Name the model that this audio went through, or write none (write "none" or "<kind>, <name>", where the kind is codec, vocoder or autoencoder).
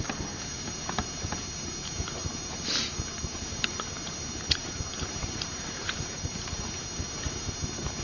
vocoder, BigVGAN v2